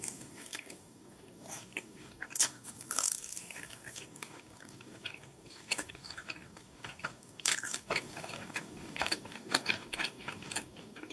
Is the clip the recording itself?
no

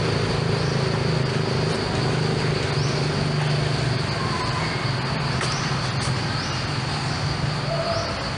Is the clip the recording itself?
yes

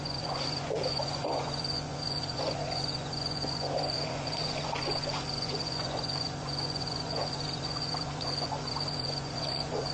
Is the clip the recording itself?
no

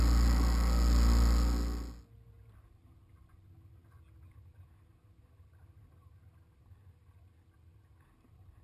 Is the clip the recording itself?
yes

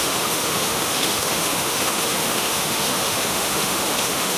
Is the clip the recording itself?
no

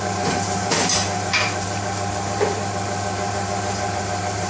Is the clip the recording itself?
no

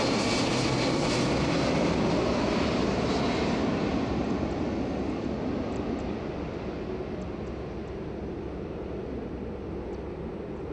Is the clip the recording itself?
yes